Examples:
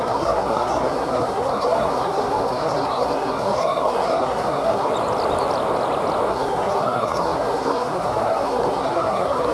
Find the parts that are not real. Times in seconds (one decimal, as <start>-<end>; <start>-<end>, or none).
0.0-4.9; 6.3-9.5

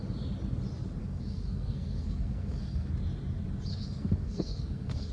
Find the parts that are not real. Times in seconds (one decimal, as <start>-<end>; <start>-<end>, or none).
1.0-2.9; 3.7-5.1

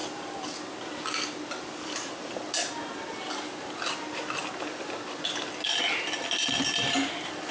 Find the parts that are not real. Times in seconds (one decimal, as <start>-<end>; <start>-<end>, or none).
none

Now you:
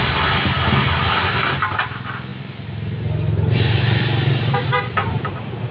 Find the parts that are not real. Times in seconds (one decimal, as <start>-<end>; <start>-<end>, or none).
none

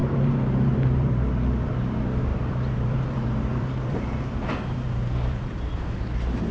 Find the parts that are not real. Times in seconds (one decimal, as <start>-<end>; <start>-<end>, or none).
0.0-1.6; 2.3-6.5

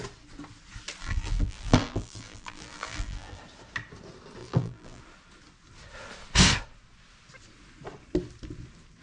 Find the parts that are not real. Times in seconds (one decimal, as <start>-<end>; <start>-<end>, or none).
1.0-3.4; 4.4-5.0

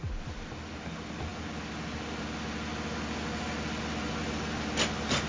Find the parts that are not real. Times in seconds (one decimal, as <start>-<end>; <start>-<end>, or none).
none

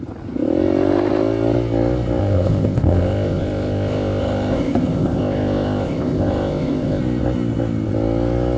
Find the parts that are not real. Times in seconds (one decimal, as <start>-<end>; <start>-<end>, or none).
2.2-7.0